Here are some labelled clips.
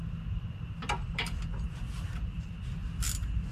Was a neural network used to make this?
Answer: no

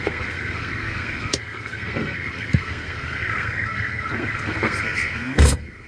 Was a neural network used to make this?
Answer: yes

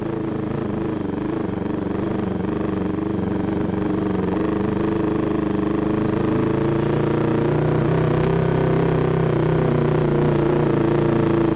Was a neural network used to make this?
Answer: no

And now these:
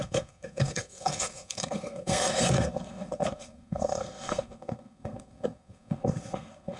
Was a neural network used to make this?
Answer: yes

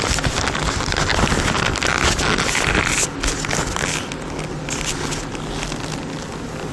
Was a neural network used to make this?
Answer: no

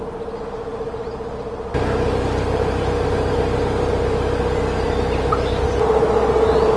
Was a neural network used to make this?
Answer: no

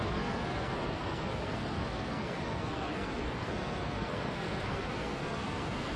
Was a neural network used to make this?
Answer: yes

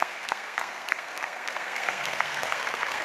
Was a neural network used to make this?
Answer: yes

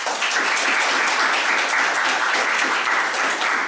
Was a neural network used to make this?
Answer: no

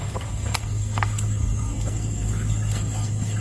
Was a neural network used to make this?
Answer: yes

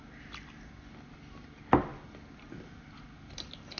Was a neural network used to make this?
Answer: no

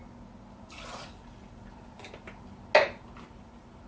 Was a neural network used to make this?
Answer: no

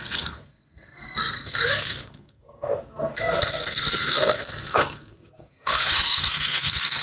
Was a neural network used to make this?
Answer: yes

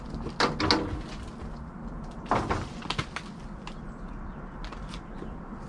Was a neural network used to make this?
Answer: no